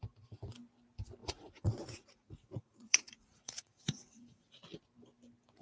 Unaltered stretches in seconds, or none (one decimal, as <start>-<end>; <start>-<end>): 0.0-1.2; 4.6-5.6